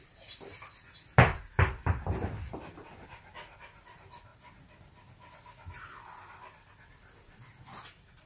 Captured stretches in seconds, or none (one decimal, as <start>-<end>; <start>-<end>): 4.3-5.9